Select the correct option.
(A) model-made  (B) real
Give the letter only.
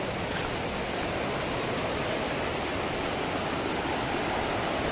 B